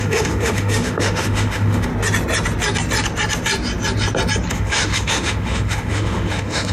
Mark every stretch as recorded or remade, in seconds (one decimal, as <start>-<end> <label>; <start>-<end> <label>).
0.0-1.9 remade; 1.9-4.5 recorded; 4.5-6.7 remade